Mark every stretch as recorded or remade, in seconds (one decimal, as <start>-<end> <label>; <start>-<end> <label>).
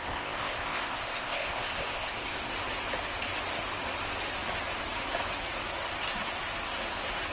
0.0-2.5 remade; 2.5-7.3 recorded